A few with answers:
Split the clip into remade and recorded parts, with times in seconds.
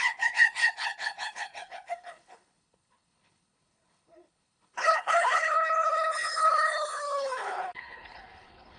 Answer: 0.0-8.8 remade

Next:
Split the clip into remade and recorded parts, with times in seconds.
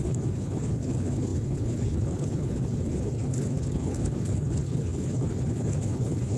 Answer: 0.0-6.4 remade